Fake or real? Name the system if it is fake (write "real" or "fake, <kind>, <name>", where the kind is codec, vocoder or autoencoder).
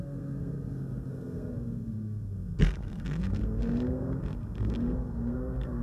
fake, codec, SNAC